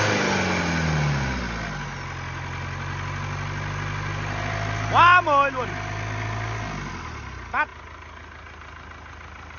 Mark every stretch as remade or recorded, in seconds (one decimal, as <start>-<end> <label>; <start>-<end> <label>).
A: 0.0-9.6 recorded